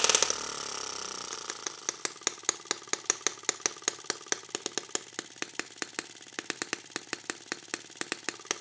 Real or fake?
real